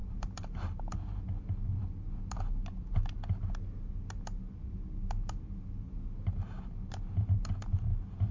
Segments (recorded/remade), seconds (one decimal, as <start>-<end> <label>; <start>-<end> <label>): 0.0-0.6 remade; 0.6-8.3 recorded